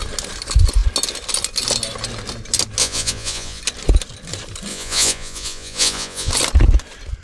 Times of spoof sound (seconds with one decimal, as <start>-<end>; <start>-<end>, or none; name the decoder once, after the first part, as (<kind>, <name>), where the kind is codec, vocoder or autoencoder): 2.8-3.6 (vocoder, Vocos); 4.7-6.3